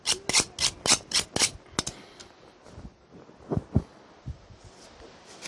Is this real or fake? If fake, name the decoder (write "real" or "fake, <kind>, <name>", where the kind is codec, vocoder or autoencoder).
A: real